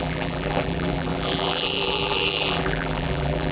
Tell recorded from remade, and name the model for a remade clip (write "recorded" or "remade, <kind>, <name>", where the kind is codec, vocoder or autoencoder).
remade, vocoder, BigVGAN v2